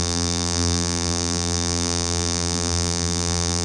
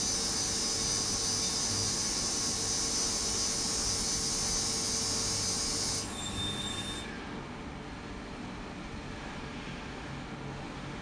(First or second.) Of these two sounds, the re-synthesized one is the first